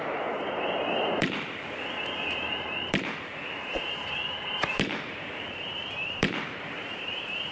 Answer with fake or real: fake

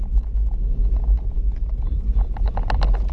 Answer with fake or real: real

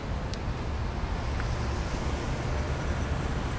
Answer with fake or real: real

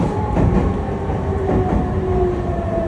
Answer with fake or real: fake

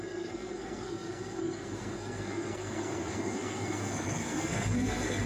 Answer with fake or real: fake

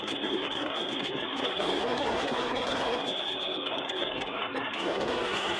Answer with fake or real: fake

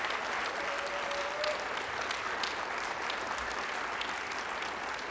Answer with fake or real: real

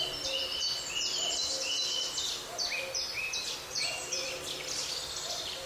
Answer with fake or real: real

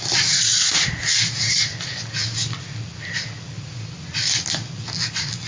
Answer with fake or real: real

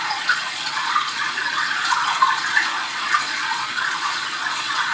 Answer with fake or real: fake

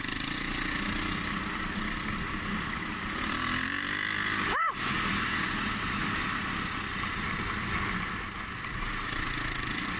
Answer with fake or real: real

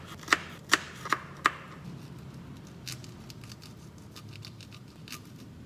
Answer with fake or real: real